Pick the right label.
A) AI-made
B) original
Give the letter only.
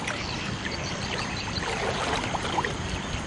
B